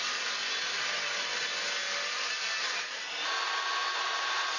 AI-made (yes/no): no